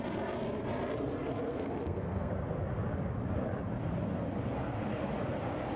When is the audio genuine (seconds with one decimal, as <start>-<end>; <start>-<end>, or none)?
0.0-1.5; 2.3-5.8